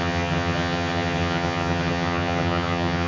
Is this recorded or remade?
remade